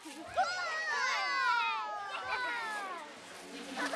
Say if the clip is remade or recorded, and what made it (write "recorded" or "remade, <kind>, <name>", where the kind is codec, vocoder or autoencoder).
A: recorded